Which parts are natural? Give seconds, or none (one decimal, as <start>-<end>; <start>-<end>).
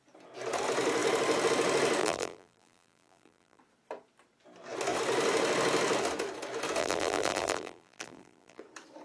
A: 0.0-2.0; 3.6-6.8; 8.6-9.0